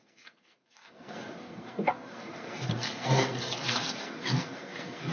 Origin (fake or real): fake